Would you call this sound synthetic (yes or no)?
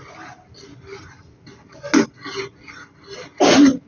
no